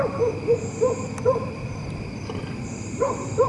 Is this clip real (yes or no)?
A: no